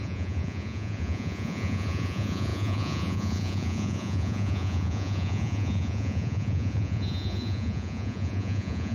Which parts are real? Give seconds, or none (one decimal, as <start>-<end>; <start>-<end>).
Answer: none